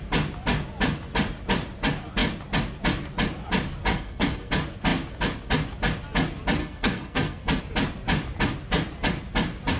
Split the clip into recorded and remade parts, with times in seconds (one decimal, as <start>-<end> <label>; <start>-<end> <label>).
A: 0.0-3.9 recorded; 3.9-4.5 remade; 4.5-6.6 recorded; 6.6-7.6 remade; 7.6-9.8 recorded